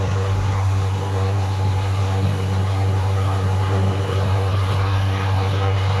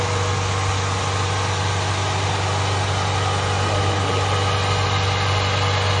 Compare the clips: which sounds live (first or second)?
second